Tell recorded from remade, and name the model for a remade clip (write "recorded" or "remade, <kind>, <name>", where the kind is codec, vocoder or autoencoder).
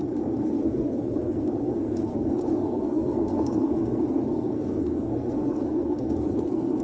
remade, codec, SNAC